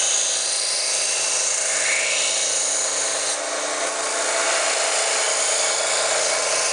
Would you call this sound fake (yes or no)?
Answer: no